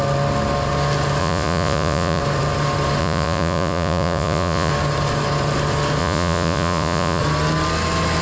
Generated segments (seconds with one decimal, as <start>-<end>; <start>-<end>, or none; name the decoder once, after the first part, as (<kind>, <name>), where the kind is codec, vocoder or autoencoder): 1.2-2.2 (vocoder, Vocos); 3.0-4.7; 6.0-7.2